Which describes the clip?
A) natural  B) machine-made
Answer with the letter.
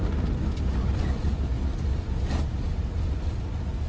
A